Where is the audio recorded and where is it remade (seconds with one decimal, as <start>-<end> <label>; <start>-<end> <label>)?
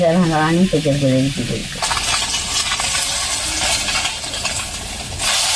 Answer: 0.0-5.6 recorded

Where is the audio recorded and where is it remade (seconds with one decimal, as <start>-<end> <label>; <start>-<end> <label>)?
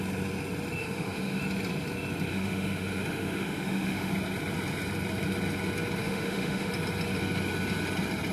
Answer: 0.0-0.8 recorded; 0.8-1.4 remade; 1.4-2.3 recorded; 2.3-4.1 remade; 4.1-6.0 recorded; 6.0-6.7 remade; 6.7-8.3 recorded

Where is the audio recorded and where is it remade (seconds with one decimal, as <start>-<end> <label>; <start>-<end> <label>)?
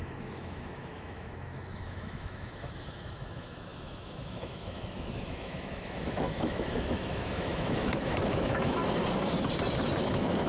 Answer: 0.0-8.8 remade; 8.8-10.0 recorded; 10.0-10.5 remade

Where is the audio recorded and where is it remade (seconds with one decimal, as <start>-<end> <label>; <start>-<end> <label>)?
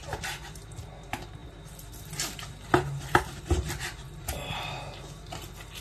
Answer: 0.0-5.8 recorded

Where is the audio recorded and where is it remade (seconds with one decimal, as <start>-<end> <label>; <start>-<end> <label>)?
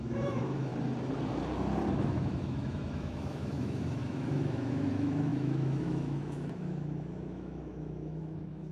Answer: 0.0-0.7 remade; 0.7-1.9 recorded; 1.9-8.7 remade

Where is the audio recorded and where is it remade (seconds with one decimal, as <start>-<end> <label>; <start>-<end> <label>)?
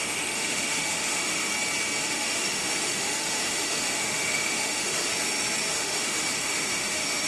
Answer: 0.0-1.5 remade; 1.5-2.0 recorded; 2.0-5.1 remade; 5.1-5.7 recorded; 5.7-7.3 remade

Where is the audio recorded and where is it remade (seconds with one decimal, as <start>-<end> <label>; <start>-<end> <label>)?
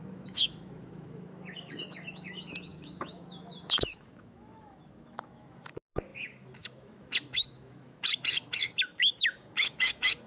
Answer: 0.0-10.3 remade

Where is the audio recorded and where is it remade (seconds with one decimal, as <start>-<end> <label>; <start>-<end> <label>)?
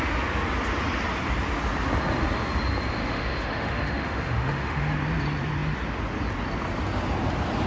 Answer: 0.0-3.0 recorded; 3.0-4.8 remade; 4.8-7.7 recorded